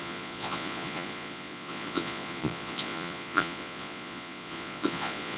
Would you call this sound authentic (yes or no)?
no